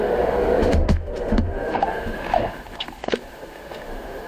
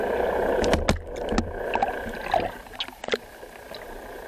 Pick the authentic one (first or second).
second